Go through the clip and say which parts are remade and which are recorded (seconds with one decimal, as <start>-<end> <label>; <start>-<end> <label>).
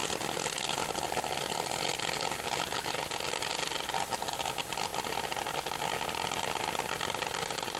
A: 0.0-4.9 recorded; 4.9-5.4 remade; 5.4-7.8 recorded